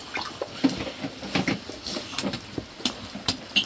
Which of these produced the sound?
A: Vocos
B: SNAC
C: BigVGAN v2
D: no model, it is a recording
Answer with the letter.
D